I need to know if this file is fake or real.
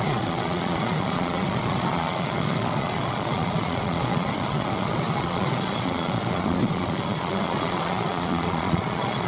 fake